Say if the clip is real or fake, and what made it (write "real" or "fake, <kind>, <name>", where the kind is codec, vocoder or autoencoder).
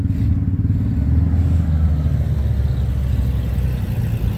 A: real